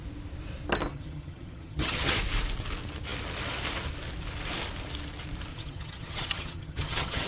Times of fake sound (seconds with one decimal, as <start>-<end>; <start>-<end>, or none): 0.9-2.2; 5.5-7.3